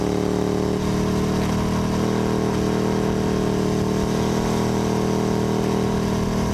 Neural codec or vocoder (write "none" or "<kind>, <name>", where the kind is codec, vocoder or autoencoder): none